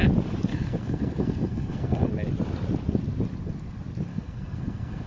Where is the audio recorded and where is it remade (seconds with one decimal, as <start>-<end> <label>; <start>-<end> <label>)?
0.0-0.5 recorded; 0.5-2.1 remade; 2.1-4.1 recorded; 4.1-5.1 remade